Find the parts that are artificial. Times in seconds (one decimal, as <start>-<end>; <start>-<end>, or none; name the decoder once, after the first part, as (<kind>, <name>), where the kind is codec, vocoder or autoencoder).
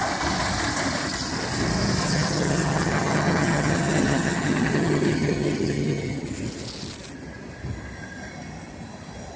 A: 2.0-6.3 (vocoder, HiFi-GAN)